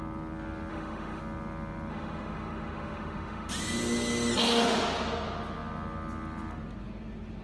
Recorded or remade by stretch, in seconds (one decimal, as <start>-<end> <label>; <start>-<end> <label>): 0.0-0.7 recorded; 0.7-1.2 remade; 1.2-1.9 recorded; 1.9-3.5 remade; 3.5-7.4 recorded